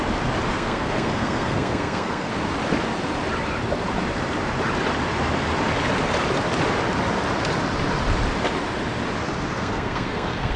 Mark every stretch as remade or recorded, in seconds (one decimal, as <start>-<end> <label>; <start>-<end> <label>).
0.0-0.5 recorded; 0.5-2.3 remade; 2.3-9.6 recorded; 9.6-10.6 remade